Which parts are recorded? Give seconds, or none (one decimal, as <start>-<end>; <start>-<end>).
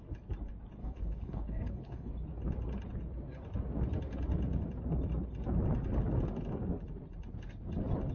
0.0-0.8; 2.1-8.1